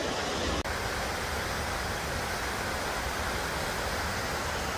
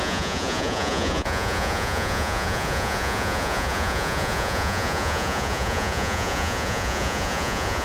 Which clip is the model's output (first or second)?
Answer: second